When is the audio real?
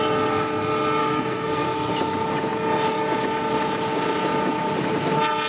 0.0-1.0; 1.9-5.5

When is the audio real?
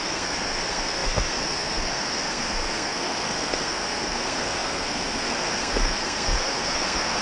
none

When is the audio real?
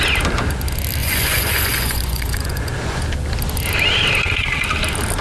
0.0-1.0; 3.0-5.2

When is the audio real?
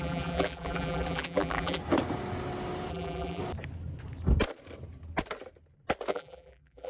1.8-2.9; 3.4-6.1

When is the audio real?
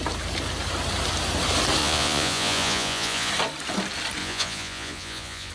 0.0-1.8; 3.3-4.2